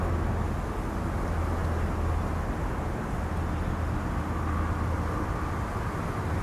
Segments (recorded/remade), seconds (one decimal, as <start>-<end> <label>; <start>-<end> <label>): 0.0-6.4 recorded